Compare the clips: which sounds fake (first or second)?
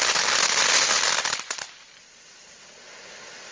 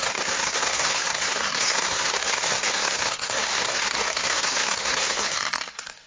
second